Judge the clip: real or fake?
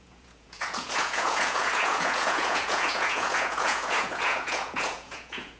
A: fake